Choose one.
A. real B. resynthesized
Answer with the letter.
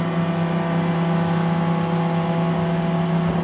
A